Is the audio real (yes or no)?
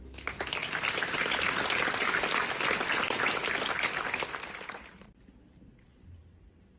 yes